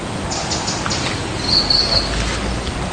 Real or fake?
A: real